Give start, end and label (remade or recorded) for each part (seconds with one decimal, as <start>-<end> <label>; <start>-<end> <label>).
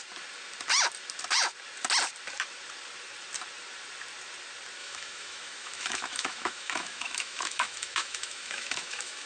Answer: 0.0-4.8 recorded; 4.8-9.3 remade